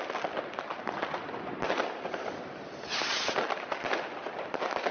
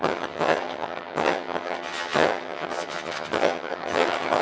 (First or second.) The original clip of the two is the first